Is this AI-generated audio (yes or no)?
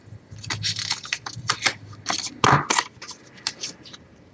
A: no